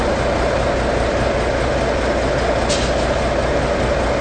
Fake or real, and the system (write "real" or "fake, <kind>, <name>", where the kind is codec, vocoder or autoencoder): real